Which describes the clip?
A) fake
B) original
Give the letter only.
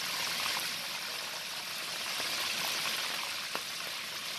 B